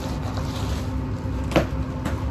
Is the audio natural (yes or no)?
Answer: yes